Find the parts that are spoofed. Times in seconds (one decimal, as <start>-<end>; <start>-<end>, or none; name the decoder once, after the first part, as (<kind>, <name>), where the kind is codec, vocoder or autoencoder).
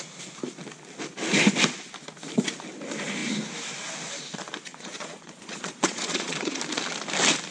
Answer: 4.7-6.6 (vocoder, Vocos)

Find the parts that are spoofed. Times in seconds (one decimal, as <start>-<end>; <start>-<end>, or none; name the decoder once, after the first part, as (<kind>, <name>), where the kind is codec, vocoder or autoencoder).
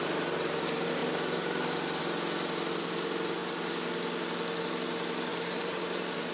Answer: 5.3-6.3 (vocoder, BigVGAN v2)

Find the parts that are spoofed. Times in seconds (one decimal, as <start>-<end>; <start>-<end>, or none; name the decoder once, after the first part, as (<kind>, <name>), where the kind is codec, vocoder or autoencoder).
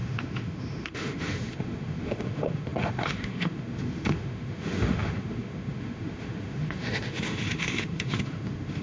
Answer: 0.0-8.8 (autoencoder, DAC-VAE)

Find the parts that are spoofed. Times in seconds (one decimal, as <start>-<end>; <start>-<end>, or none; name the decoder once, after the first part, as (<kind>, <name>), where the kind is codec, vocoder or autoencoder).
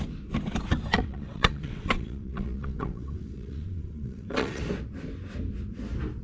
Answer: 0.9-4.6 (vocoder, WaveNeXt)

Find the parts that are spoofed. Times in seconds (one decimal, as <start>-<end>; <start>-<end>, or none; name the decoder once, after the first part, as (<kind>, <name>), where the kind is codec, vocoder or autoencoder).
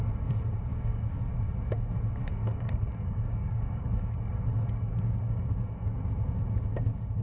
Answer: 0.7-1.2 (codec, DAC); 2.3-4.2; 4.9-6.1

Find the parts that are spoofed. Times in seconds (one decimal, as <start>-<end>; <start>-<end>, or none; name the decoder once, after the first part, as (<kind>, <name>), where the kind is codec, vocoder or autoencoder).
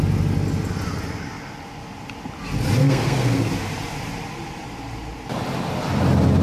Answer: 2.8-3.5 (codec, SNAC)